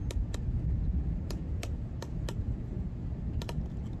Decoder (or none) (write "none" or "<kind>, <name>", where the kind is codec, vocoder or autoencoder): none